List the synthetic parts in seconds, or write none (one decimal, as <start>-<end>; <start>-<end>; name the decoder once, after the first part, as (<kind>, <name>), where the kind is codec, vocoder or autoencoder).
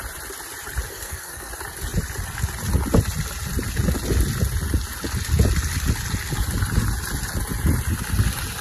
0.9-1.5 (codec, SNAC)